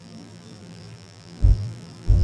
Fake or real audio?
fake